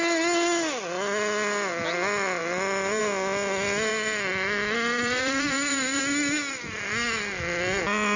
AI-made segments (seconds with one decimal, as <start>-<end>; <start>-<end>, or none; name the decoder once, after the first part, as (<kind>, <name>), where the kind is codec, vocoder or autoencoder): 2.4-3.0 (vocoder, BigVGAN v2); 3.9-6.0